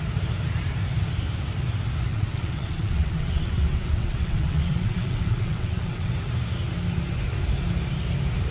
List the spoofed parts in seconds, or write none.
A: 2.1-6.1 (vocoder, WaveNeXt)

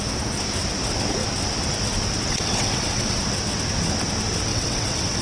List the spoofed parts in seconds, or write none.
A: 2.3-3.2 (vocoder, WaveNeXt); 4.5-5.2

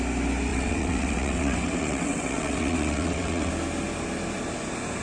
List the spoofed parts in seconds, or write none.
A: 0.5-3.5 (vocoder, WaveNeXt)

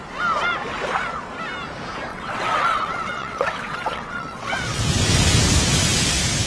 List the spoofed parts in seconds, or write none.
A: 2.1-4.8 (vocoder, WaveNeXt)

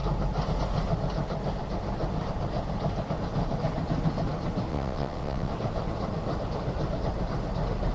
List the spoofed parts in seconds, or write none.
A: 4.7-5.5 (vocoder, WaveNeXt)

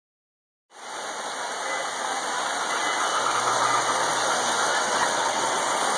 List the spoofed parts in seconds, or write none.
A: 4.7-5.6 (vocoder, WaveNeXt)

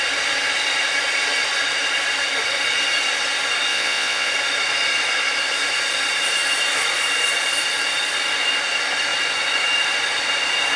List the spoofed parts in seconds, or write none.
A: 3.7-4.3 (vocoder, WaveNeXt)